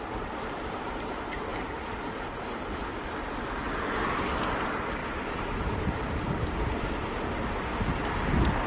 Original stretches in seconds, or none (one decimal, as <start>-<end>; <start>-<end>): 0.0-8.7